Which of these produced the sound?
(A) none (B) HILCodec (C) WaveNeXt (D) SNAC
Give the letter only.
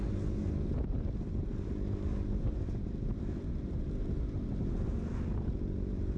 A